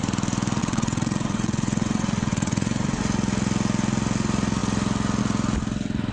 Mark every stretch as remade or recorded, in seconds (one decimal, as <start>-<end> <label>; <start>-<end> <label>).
0.0-0.6 recorded; 0.6-3.0 remade; 3.0-6.1 recorded